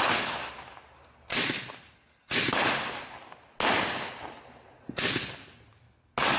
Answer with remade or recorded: recorded